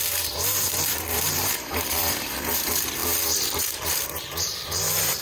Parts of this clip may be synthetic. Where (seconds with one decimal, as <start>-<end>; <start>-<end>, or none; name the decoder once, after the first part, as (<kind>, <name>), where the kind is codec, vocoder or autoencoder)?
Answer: 0.0-5.2 (vocoder, BigVGAN v2)